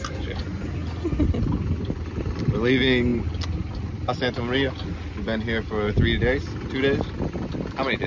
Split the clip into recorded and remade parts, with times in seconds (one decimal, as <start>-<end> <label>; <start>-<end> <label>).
0.0-8.1 recorded